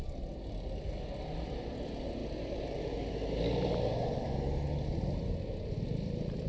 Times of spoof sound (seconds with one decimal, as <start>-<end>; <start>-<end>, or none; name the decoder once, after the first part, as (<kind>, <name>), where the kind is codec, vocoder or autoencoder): none